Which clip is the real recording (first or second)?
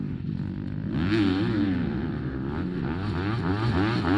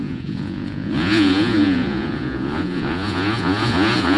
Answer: first